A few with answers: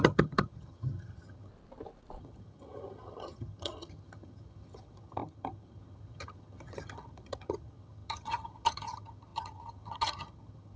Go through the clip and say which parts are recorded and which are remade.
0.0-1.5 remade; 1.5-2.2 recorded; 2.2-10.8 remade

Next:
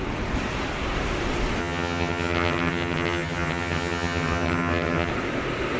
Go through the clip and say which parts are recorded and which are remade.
0.0-1.6 recorded; 1.6-5.1 remade; 5.1-5.8 recorded

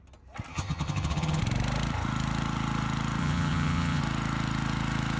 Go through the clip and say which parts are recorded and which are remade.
0.0-0.5 recorded; 0.5-1.4 remade; 1.4-3.2 recorded; 3.2-4.0 remade; 4.0-5.2 recorded

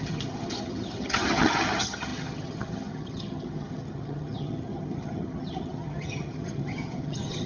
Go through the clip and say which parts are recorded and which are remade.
0.0-7.5 remade

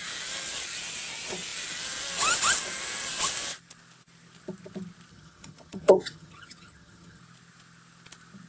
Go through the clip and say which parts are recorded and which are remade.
0.0-5.1 recorded; 5.1-7.2 remade; 7.2-8.5 recorded